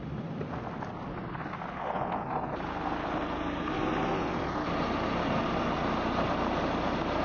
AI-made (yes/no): no